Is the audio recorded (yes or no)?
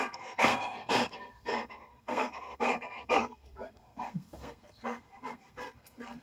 no